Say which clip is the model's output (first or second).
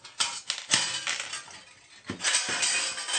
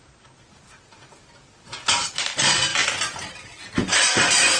second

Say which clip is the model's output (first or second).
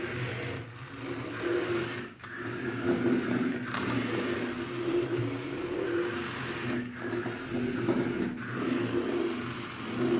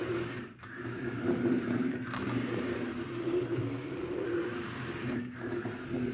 second